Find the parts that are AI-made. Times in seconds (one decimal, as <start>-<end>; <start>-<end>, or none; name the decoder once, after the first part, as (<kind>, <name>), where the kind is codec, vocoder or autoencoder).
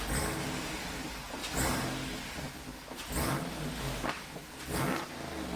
none